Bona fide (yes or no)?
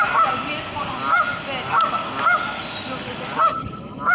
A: yes